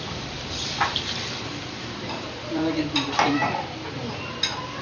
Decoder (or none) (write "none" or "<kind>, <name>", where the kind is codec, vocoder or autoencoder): vocoder, BigVGAN v2